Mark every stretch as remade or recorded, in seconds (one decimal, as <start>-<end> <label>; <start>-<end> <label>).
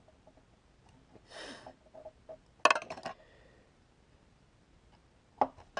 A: 0.0-5.8 recorded